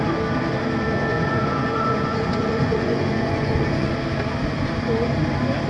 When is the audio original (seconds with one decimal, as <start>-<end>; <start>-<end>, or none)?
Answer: 0.0-1.1; 3.9-5.7